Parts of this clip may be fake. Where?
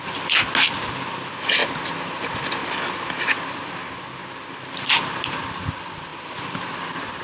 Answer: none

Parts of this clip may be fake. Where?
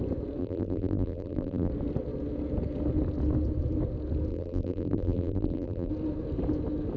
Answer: 0.4-1.7 (vocoder, BigVGAN v2); 4.3-5.9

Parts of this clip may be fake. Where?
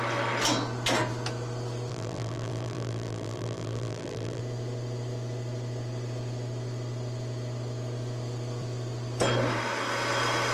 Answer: 1.9-4.4 (vocoder, BigVGAN v2)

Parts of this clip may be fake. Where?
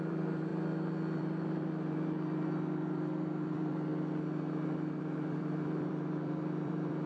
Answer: 0.0-0.5 (vocoder, BigVGAN v2); 1.2-3.9; 5.0-7.1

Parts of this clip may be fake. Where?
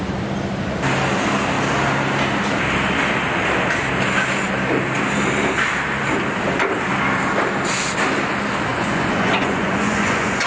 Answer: 8.7-10.5 (vocoder, Vocos)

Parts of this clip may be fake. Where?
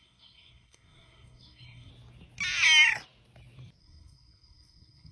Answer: 0.0-1.9 (codec, SNAC); 3.8-5.1